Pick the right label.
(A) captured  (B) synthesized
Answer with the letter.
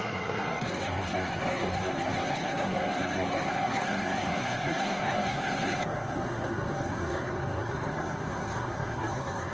B